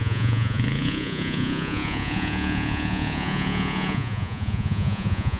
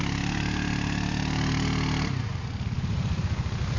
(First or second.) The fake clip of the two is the first